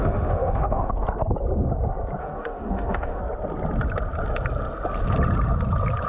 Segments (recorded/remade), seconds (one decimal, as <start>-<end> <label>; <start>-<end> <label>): 0.0-0.9 remade; 0.9-2.2 recorded; 2.2-3.2 remade; 3.2-6.1 recorded